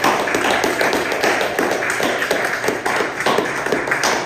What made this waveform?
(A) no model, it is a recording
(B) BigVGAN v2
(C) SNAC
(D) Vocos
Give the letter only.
A